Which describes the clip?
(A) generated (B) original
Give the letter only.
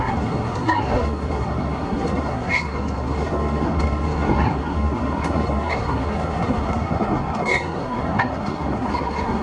A